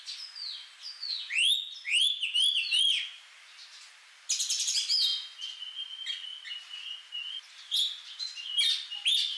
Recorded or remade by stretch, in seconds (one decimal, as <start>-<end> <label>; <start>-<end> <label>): 0.0-9.4 recorded